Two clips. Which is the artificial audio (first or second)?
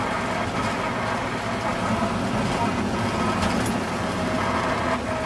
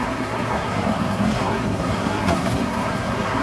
second